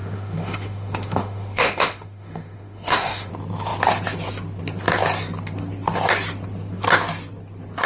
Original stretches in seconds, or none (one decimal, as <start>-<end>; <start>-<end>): 3.3-7.9